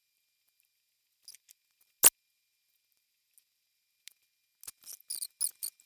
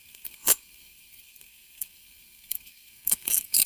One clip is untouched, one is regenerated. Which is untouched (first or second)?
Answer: first